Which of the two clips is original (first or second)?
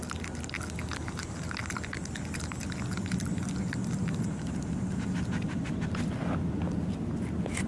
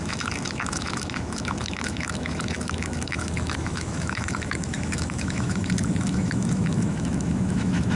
first